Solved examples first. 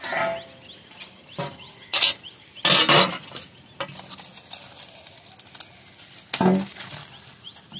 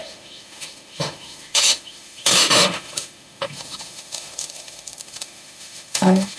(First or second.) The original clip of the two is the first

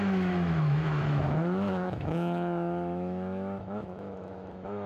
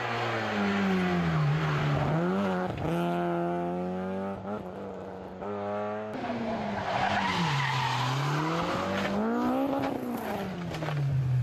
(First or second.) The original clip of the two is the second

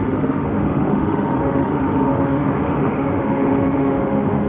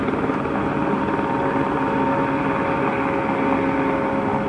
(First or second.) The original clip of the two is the second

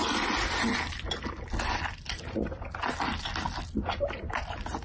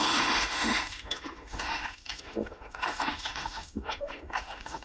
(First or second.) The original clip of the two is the first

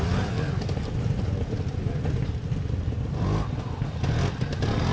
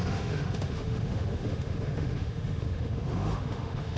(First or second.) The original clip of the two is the first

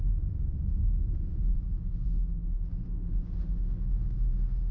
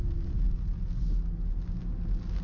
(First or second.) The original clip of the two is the second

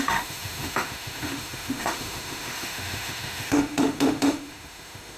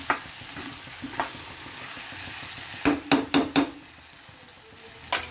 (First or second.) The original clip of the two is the second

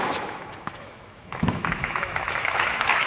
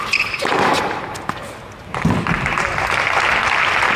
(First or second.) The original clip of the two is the second